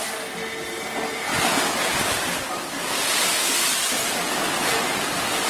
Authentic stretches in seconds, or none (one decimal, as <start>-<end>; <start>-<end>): 0.0-5.5